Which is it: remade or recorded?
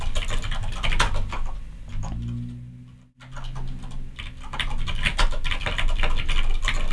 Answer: recorded